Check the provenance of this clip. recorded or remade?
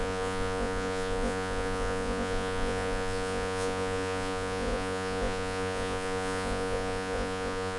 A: remade